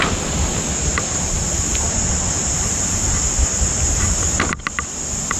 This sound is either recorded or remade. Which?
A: recorded